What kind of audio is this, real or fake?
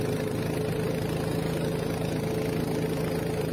real